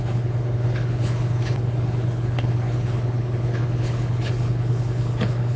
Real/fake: fake